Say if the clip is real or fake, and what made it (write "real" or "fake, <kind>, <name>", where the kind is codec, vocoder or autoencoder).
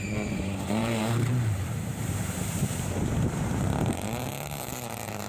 fake, vocoder, BigVGAN v2